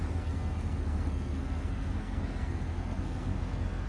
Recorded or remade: remade